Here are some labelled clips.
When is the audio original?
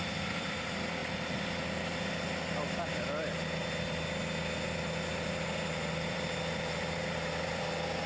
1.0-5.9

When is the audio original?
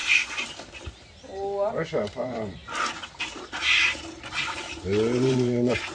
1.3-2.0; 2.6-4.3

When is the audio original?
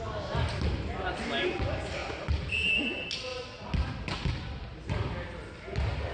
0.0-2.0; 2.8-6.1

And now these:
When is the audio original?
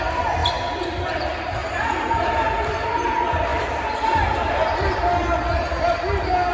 0.0-3.5; 5.8-6.5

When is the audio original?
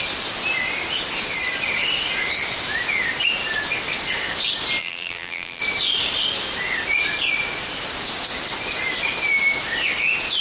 0.0-4.8; 5.6-10.4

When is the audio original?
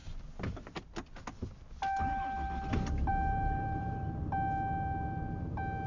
0.0-3.1; 4.2-5.9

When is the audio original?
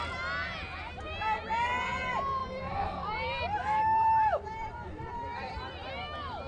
0.0-2.4; 5.9-6.5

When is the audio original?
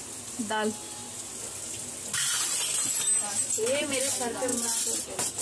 0.0-5.4